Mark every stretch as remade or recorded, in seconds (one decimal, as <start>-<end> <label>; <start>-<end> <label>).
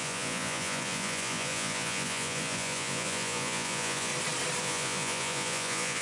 0.0-4.1 remade; 4.1-4.6 recorded; 4.6-6.0 remade